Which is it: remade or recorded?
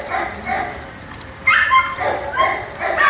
recorded